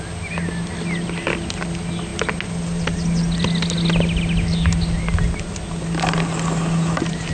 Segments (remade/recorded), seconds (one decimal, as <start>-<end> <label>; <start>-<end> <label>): 0.0-7.3 recorded